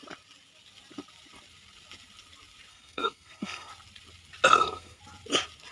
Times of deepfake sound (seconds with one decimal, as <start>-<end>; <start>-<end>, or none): 2.7-3.7; 4.5-5.0